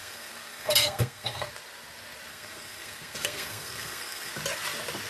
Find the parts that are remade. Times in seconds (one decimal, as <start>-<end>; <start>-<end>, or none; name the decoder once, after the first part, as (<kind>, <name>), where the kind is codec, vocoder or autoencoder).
0.0-1.5 (codec, SNAC); 2.3-4.3

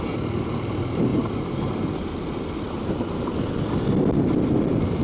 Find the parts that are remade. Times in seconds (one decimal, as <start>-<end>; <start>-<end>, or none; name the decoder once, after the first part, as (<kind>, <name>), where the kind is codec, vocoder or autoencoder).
1.1-1.9 (vocoder, BigVGAN v2)